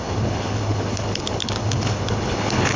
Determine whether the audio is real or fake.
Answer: fake